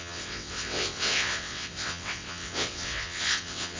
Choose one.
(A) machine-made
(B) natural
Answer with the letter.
A